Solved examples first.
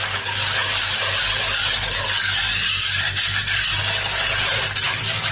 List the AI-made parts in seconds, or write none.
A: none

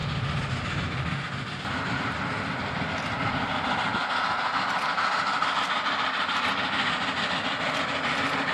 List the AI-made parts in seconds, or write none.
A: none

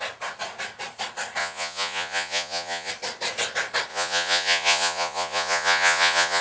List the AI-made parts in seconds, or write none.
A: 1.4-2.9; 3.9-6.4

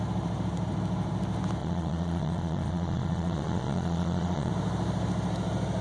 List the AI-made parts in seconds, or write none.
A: 1.6-4.5

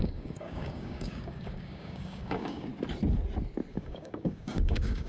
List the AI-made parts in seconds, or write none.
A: 0.0-2.7; 3.7-5.1